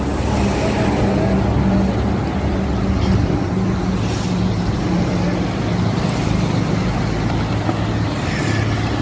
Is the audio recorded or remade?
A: recorded